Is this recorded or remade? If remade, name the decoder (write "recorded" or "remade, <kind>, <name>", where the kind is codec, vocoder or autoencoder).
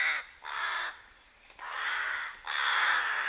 recorded